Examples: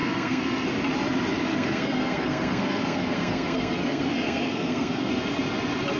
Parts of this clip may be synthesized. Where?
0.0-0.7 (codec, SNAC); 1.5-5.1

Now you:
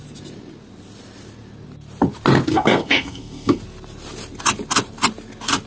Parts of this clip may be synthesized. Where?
2.5-3.6 (codec, SNAC)